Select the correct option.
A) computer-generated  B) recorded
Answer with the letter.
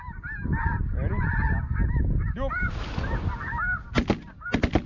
B